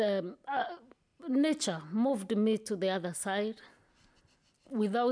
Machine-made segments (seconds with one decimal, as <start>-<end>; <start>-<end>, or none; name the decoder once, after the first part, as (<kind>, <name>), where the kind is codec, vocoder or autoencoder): none